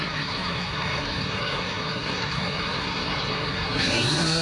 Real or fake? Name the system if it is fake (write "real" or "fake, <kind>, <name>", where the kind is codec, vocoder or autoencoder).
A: fake, codec, SNAC